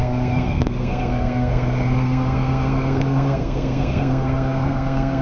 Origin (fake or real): fake